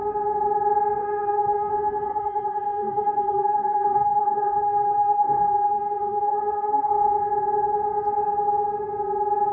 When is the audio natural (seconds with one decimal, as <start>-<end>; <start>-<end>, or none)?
0.0-1.0; 1.7-2.1; 6.9-9.5